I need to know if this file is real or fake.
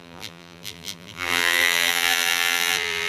fake